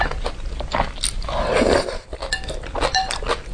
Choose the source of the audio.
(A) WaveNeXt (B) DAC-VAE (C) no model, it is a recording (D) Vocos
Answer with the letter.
C